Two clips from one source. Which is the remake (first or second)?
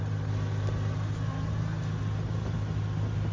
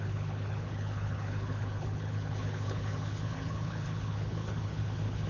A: second